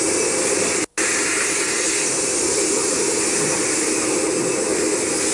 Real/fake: real